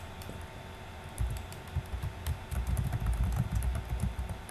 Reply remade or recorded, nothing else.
recorded